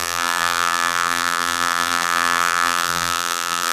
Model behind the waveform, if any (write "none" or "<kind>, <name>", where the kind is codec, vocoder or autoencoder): vocoder, BigVGAN v2